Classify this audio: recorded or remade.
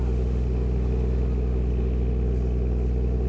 recorded